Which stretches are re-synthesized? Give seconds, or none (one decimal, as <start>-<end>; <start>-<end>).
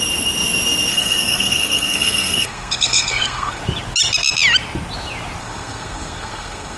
0.9-3.6; 5.4-6.8